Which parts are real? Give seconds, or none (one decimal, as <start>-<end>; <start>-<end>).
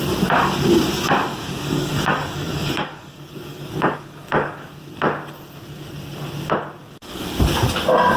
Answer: 0.0-1.3; 4.8-6.8; 7.4-8.2